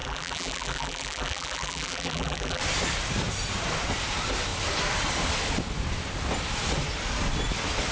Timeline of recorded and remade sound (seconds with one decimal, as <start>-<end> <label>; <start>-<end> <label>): 0.0-2.6 remade; 2.6-7.9 recorded